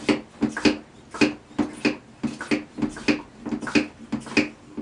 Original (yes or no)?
yes